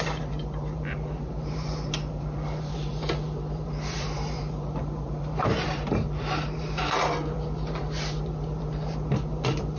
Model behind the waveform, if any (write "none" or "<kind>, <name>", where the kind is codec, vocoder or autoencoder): vocoder, BigVGAN v2